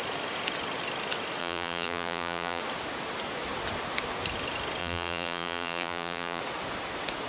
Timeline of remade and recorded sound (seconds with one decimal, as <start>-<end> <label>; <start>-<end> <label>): 0.0-1.4 recorded; 1.4-2.6 remade; 2.6-4.8 recorded; 4.8-6.4 remade; 6.4-7.3 recorded